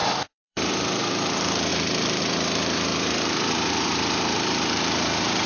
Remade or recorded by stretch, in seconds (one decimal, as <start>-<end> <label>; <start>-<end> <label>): 0.0-5.5 remade